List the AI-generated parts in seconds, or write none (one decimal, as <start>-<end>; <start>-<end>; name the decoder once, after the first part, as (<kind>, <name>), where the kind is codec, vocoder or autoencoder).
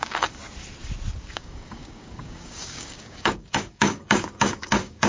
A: 0.0-0.4 (codec, DAC); 1.2-5.1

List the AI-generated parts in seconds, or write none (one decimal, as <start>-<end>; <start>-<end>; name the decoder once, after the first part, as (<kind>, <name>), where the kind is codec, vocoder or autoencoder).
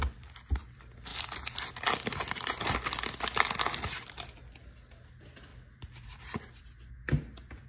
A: none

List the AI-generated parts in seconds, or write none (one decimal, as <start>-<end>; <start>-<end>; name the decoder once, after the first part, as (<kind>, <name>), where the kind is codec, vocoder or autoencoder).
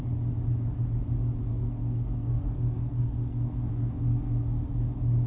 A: 1.5-4.7 (codec, SNAC)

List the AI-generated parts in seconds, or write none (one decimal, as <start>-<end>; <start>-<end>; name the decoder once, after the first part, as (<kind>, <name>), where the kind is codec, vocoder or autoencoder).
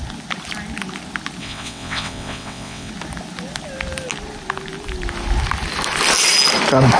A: 1.4-2.9 (vocoder, WaveNeXt)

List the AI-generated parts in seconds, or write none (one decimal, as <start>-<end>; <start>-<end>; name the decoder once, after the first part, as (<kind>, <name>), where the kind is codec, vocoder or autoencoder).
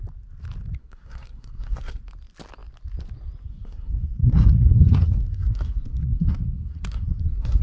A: 0.8-2.0 (codec, SNAC); 3.5-7.6